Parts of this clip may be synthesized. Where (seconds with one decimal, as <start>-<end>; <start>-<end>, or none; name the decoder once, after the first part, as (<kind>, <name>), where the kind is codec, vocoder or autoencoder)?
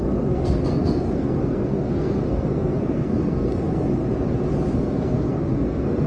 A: 0.0-4.0 (codec, SNAC); 4.7-6.1